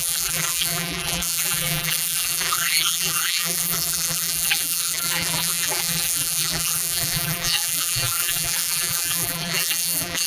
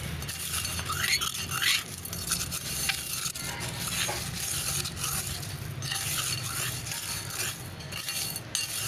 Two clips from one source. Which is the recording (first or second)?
second